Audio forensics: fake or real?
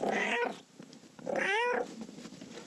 real